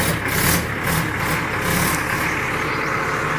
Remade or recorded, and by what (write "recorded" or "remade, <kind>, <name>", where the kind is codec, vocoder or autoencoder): recorded